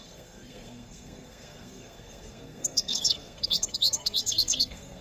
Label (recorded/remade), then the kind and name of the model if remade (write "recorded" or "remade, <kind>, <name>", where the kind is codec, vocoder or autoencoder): remade, codec, SNAC